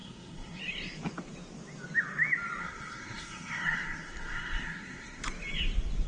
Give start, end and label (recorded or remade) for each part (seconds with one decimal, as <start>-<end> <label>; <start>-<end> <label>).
0.0-0.6 remade; 0.6-2.6 recorded; 2.6-5.2 remade; 5.2-6.1 recorded